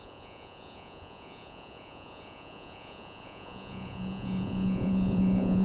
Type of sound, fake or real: fake